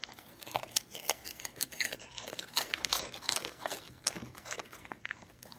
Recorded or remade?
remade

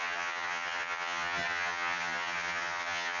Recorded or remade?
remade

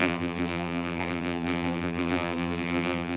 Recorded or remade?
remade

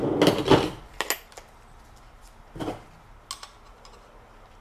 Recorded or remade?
recorded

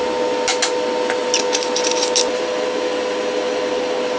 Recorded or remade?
recorded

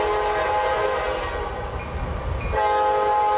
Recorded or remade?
recorded